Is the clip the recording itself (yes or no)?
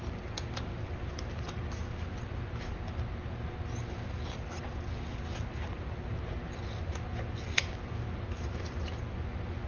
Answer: yes